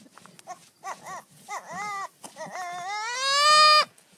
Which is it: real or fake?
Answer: real